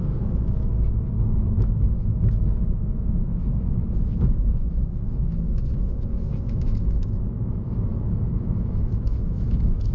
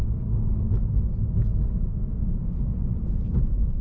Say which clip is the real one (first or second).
second